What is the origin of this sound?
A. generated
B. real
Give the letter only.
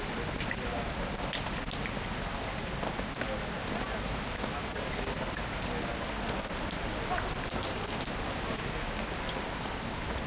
B